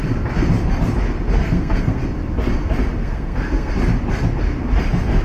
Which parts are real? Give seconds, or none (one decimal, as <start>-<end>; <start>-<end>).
0.0-1.4; 2.0-3.0; 3.7-5.2